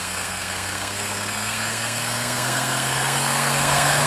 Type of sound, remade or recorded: remade